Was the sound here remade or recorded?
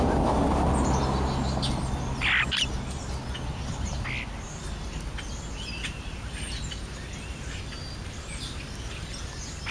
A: recorded